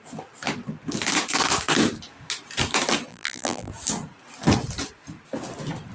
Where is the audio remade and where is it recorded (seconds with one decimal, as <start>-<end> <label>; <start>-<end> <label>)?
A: 0.0-3.1 recorded; 3.1-3.7 remade; 3.7-5.9 recorded